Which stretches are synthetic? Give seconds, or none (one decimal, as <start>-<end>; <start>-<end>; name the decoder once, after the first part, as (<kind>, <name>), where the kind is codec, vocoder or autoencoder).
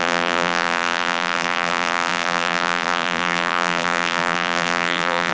0.0-5.3 (vocoder, BigVGAN v2)